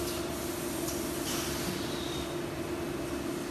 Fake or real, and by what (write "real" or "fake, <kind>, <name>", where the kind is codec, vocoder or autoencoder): real